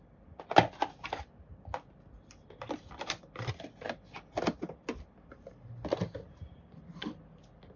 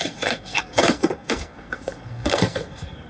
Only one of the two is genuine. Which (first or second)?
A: first